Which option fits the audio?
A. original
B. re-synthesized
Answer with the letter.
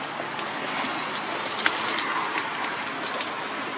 A